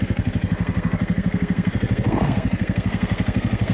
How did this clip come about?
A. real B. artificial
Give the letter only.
B